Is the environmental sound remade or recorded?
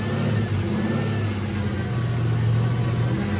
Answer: recorded